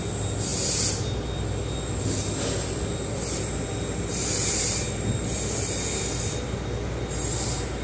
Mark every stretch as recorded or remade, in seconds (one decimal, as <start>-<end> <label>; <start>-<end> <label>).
0.0-7.8 recorded